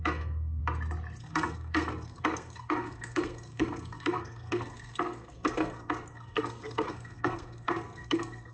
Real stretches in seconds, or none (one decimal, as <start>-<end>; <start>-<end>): 0.6-1.2